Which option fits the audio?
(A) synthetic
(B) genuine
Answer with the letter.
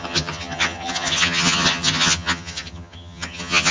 A